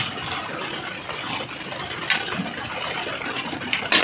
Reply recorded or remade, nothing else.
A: recorded